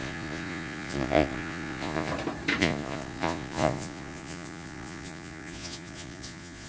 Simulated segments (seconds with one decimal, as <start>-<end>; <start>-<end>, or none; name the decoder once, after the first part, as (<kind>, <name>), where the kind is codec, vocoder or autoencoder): 0.0-2.1 (vocoder, Vocos); 2.6-6.7